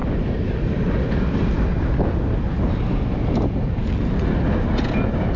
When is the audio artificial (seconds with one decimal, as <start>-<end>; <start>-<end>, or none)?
none